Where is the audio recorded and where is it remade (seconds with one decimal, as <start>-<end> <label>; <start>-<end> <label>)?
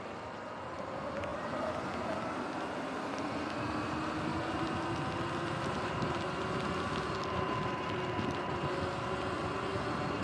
0.0-10.2 recorded